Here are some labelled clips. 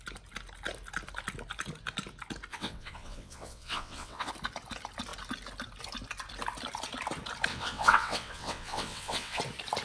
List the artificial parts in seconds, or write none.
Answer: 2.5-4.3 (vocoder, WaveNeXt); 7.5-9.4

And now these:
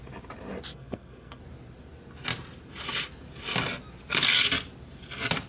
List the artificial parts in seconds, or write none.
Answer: 0.7-1.4 (codec, SNAC)

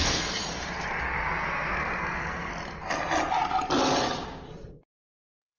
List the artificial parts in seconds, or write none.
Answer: 0.0-0.4 (codec, SNAC); 1.0-2.5; 4.7-5.6

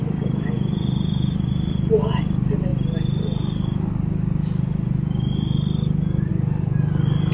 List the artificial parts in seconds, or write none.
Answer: none

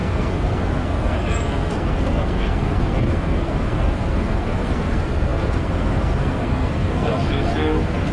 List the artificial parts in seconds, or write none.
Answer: 0.0-8.1 (codec, SNAC)

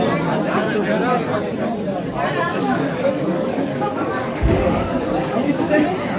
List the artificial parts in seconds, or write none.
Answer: 2.5-5.7 (codec, DAC)

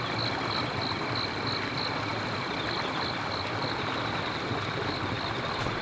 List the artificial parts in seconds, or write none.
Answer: none

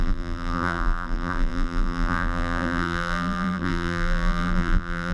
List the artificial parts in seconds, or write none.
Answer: 0.0-5.1 (vocoder, BigVGAN v2)